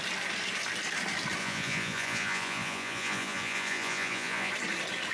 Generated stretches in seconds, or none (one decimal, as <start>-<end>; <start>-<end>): 1.4-4.5